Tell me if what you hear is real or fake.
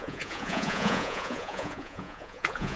fake